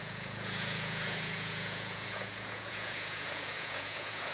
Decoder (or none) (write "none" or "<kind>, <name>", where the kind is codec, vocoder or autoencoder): vocoder, Vocos